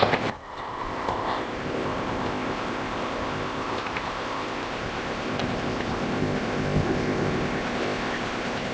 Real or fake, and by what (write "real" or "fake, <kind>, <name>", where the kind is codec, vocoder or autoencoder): fake, codec, ZipCodec